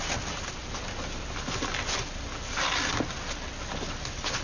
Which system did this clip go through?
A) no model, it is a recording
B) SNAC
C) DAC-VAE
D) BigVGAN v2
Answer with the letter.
A